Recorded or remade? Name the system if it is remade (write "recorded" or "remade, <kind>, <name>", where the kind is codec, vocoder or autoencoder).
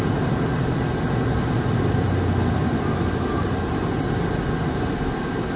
recorded